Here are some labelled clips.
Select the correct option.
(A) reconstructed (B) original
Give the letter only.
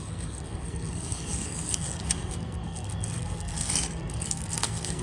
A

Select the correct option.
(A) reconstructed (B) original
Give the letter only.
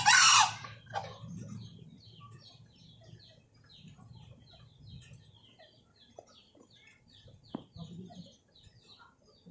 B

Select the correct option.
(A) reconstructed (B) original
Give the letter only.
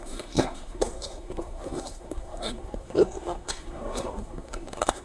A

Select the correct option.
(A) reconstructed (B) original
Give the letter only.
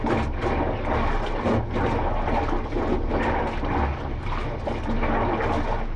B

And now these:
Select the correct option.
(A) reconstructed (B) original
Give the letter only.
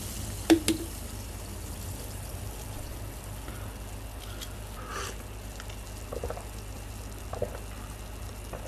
B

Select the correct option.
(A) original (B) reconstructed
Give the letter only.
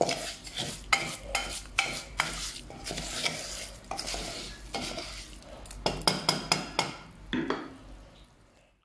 A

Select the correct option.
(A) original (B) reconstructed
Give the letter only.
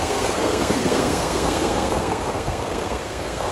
B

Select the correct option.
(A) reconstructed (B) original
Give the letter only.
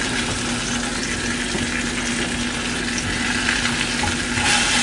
B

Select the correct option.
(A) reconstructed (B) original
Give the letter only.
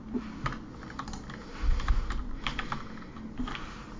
B